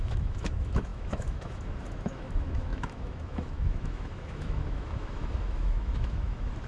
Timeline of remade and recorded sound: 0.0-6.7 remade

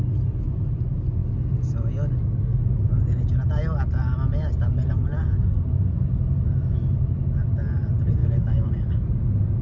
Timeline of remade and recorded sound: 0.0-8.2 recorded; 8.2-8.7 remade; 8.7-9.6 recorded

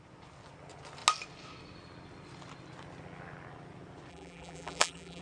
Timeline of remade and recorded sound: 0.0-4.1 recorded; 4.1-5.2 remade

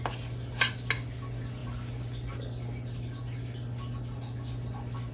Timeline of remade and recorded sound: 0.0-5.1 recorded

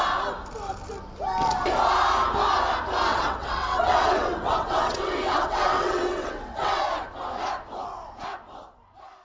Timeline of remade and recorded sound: 0.0-3.1 recorded; 3.1-6.9 remade; 6.9-9.2 recorded

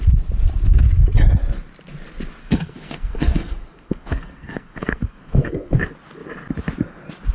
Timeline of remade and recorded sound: 0.0-2.4 recorded; 2.4-5.8 remade; 5.8-7.3 recorded